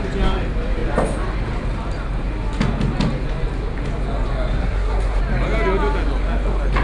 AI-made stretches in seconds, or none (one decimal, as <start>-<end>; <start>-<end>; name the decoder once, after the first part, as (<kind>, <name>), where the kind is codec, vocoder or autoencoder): 4.6-5.2 (codec, SNAC)